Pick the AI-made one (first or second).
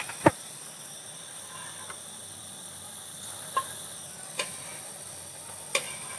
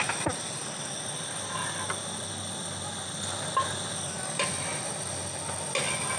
first